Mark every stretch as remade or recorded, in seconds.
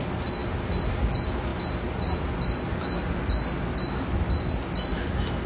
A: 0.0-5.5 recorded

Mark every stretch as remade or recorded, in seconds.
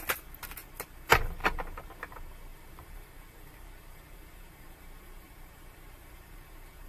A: 0.0-2.5 recorded; 2.5-6.9 remade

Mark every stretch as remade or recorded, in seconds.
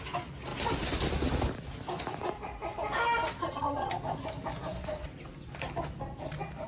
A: 0.0-3.4 recorded; 3.4-3.9 remade; 3.9-6.7 recorded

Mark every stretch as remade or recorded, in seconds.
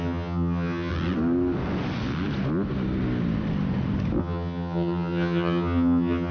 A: 0.0-0.9 remade; 0.9-4.2 recorded; 4.2-6.3 remade